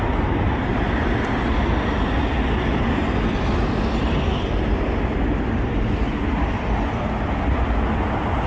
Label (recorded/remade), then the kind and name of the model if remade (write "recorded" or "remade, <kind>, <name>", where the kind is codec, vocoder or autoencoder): recorded